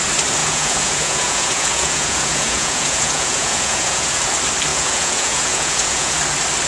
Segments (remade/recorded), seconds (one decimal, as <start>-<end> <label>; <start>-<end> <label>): 0.0-0.4 recorded; 0.4-4.2 remade; 4.2-4.7 recorded; 4.7-6.2 remade; 6.2-6.7 recorded